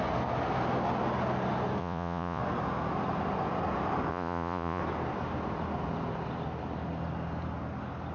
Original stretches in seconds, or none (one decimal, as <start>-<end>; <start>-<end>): 0.0-1.8; 2.4-4.1; 4.8-8.1